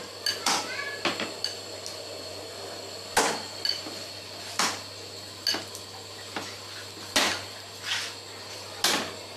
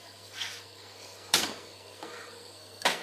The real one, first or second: first